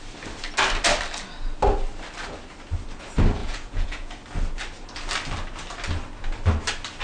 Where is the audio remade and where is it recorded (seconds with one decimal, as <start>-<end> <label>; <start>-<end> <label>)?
0.0-3.4 recorded; 3.4-4.1 remade; 4.1-7.0 recorded